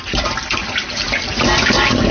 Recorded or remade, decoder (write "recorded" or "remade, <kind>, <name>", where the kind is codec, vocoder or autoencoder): recorded